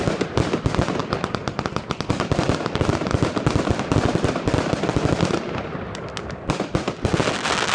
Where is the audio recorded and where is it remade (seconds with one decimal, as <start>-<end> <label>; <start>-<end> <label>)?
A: 0.0-7.7 recorded